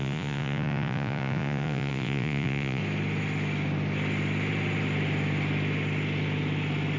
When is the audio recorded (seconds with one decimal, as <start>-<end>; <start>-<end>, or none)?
2.8-7.0

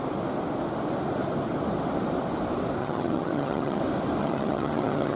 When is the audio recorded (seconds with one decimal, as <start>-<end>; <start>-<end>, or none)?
0.0-2.8; 3.8-4.2

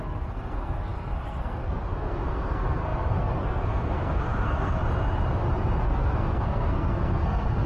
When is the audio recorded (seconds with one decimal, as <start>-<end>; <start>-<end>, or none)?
4.8-5.8

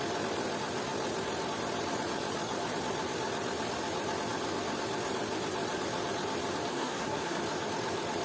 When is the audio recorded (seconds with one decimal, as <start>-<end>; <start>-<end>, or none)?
0.0-6.7; 7.4-8.2

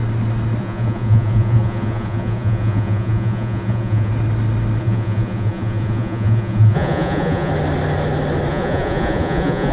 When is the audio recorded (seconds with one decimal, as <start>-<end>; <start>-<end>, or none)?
0.0-0.6; 4.1-4.8; 7.5-8.5